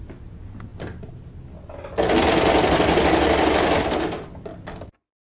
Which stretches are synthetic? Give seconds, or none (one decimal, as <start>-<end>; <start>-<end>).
none